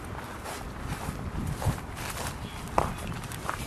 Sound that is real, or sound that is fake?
real